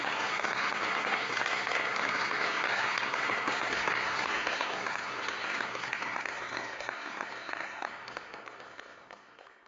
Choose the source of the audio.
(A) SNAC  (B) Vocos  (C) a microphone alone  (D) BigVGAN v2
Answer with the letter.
A